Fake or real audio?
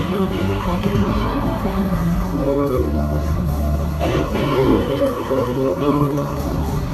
fake